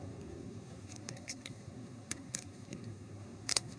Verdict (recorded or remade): remade